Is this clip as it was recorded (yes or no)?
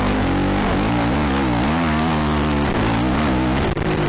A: yes